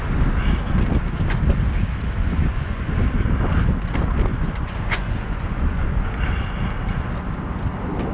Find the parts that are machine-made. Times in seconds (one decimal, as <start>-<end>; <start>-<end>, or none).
2.2-2.9; 4.3-6.1